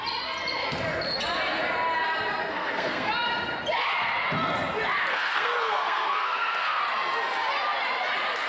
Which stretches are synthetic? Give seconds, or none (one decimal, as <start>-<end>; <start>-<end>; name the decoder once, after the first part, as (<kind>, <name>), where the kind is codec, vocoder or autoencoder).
2.5-3.1 (codec, SNAC); 5.1-6.8